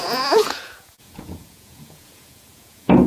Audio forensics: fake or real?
fake